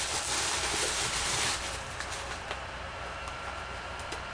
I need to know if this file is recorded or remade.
recorded